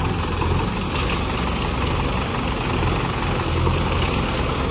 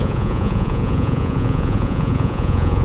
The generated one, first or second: second